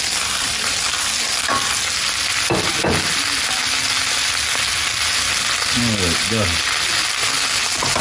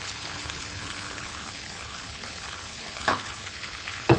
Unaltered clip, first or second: first